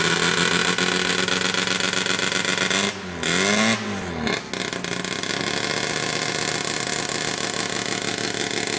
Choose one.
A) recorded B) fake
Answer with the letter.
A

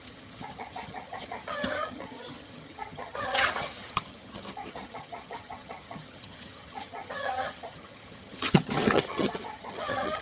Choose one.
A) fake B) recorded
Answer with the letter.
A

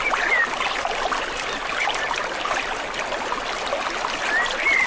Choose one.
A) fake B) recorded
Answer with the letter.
B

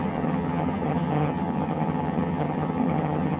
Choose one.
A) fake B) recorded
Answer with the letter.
A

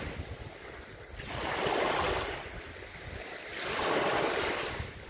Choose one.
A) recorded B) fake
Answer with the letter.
A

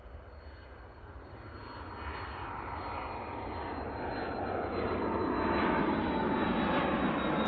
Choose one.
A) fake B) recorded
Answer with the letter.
B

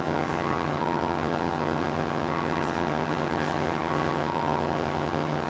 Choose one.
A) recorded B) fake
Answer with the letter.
B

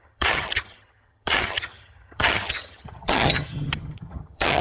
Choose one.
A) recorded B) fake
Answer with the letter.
B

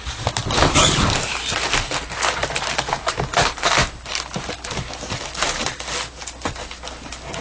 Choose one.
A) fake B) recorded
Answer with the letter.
B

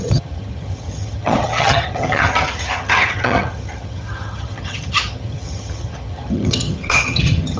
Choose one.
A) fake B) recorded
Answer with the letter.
A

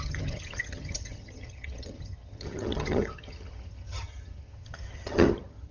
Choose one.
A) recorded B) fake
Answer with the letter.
B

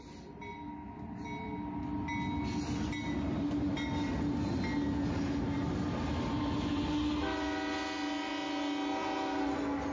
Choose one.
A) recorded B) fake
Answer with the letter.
A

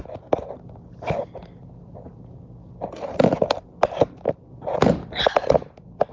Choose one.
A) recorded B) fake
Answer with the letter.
A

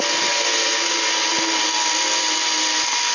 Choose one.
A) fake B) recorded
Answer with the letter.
B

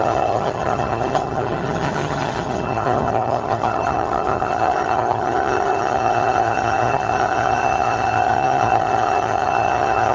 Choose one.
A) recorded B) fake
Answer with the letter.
B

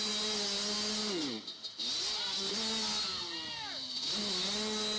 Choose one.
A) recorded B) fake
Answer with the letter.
A